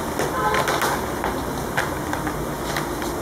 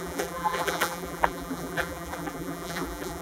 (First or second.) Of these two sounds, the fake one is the second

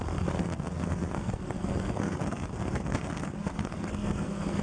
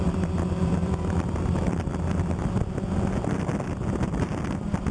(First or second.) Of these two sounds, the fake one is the first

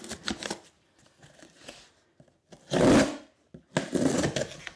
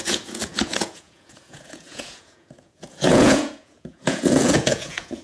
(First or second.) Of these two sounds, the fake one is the second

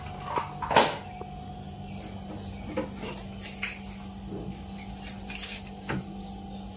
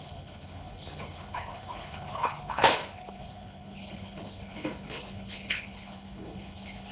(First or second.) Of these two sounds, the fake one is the second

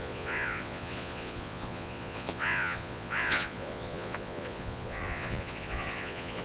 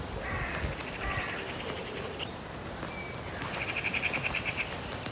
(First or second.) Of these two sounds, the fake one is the first